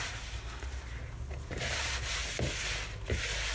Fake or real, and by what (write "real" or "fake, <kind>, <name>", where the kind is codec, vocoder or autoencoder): real